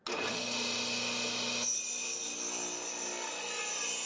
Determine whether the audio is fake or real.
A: real